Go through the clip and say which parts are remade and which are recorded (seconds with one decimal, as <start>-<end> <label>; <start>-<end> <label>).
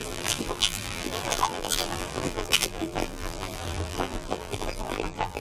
0.0-5.4 remade